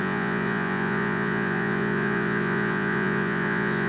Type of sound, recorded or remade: remade